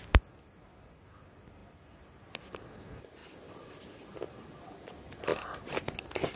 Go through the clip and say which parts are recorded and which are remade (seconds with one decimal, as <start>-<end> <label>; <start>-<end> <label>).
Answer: 0.0-6.4 recorded